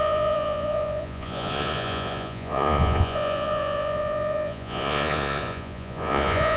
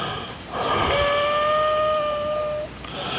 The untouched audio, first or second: second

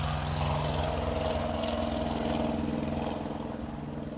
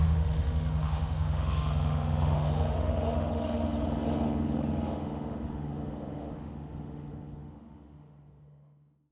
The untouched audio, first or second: first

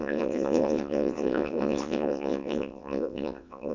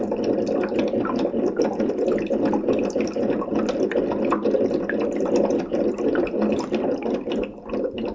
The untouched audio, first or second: second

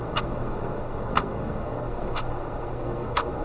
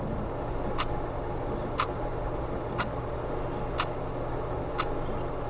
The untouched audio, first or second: second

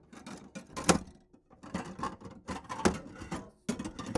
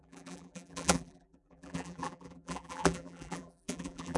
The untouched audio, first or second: first